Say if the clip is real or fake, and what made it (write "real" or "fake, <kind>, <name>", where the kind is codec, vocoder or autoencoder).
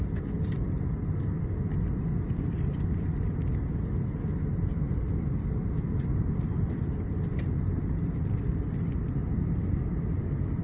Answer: real